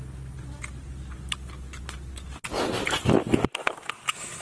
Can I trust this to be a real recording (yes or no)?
yes